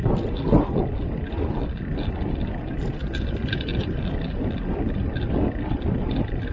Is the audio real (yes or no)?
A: yes